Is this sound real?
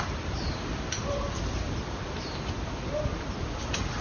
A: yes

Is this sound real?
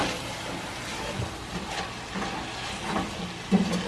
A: yes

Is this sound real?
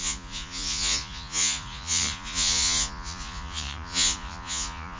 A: no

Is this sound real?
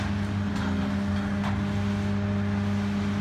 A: yes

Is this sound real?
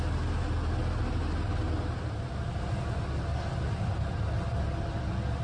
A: yes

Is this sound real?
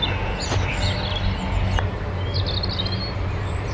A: yes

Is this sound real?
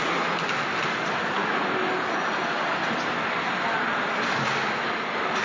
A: yes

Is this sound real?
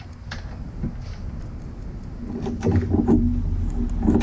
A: yes